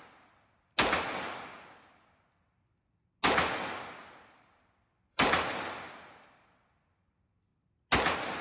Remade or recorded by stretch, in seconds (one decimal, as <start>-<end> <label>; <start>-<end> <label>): 0.0-8.4 recorded